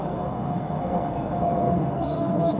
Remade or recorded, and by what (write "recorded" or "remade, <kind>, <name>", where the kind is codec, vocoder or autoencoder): remade, codec, SNAC